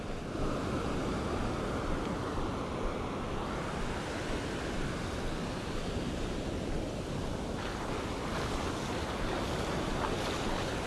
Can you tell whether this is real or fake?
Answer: real